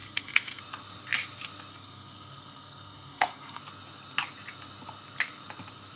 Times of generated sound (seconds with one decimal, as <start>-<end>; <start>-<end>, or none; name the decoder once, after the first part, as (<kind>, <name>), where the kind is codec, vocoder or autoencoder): 0.0-0.6 (codec, SNAC); 1.7-3.6